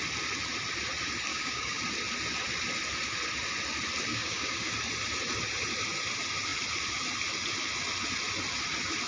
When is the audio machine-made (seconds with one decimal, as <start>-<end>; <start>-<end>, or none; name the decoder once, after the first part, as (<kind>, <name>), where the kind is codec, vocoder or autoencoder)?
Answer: 1.3-1.8 (codec, DAC); 4.1-4.7